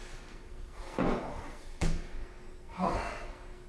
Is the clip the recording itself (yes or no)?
no